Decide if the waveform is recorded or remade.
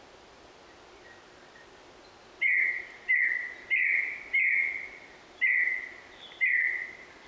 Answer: recorded